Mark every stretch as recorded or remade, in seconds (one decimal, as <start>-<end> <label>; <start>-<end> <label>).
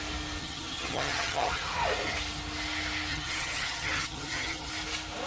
0.0-0.4 recorded; 0.4-1.6 remade; 1.6-3.1 recorded; 3.1-4.7 remade; 4.7-5.3 recorded